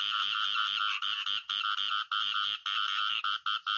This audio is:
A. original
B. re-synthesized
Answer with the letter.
A